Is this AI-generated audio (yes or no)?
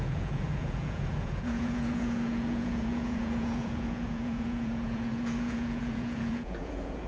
yes